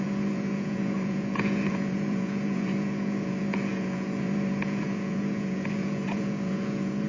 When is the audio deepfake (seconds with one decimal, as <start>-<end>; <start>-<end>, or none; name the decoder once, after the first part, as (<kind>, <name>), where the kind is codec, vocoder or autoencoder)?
0.0-7.1 (vocoder, Vocos)